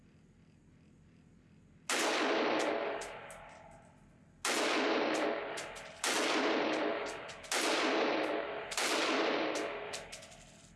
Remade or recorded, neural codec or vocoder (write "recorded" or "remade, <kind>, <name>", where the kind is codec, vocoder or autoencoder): recorded